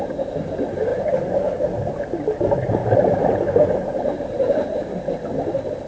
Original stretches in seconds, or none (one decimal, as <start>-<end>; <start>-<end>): 0.0-0.9; 1.6-2.8